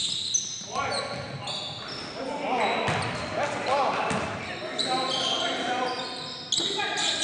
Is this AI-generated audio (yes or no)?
no